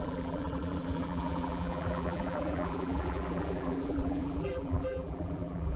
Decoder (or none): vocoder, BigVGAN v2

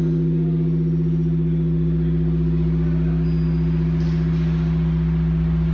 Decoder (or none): none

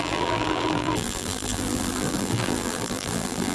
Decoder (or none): vocoder, BigVGAN v2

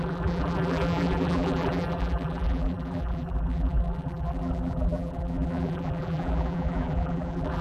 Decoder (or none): vocoder, BigVGAN v2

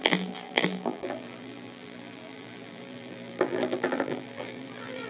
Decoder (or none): vocoder, BigVGAN v2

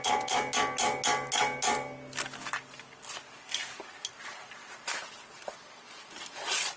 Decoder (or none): none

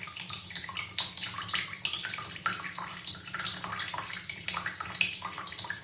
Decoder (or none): none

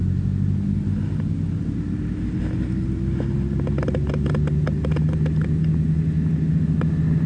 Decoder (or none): none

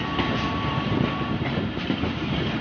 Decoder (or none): vocoder, BigVGAN v2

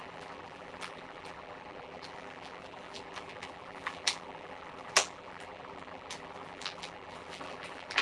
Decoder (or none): vocoder, BigVGAN v2